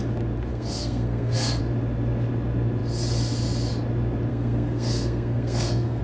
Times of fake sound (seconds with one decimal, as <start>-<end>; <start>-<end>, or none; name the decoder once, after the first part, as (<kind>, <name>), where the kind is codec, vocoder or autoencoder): 0.5-1.6 (codec, SNAC); 4.3-6.0